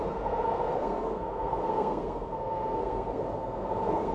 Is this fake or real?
fake